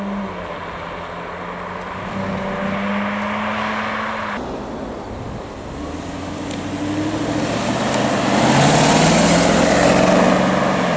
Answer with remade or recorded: recorded